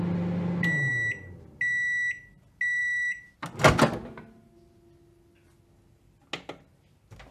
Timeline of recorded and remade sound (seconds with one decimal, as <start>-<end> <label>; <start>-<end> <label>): 0.0-7.3 recorded